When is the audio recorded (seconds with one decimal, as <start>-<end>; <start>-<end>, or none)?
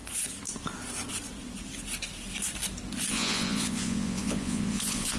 0.0-3.1